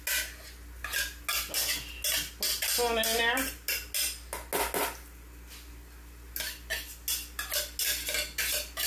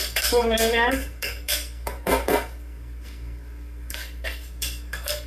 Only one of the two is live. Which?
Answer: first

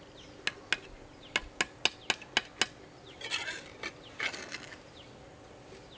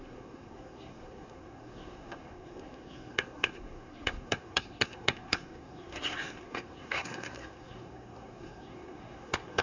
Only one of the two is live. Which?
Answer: first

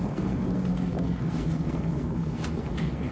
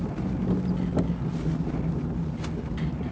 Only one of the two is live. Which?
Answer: second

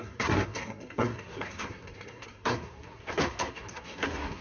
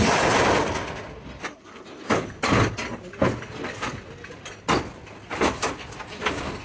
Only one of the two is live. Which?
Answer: second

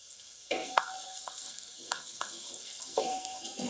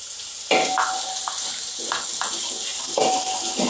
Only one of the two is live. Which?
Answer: second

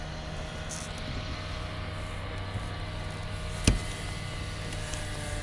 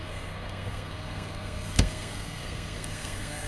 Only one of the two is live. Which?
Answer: first